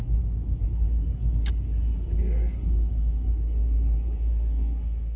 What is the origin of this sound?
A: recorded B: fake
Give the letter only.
B